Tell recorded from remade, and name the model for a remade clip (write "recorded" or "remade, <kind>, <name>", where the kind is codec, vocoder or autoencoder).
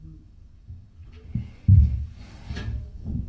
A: remade, codec, DAC